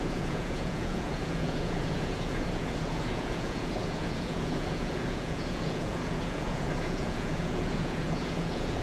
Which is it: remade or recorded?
remade